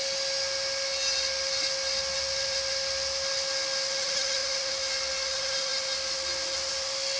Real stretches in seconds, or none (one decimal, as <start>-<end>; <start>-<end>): 0.0-7.2